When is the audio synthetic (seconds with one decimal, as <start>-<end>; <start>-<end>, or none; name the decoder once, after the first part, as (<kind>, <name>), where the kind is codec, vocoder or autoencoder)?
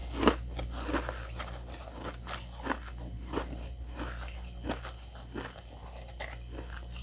none